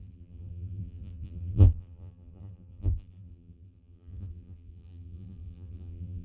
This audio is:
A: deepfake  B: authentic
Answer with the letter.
A